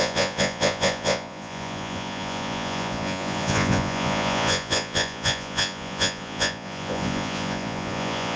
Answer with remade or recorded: remade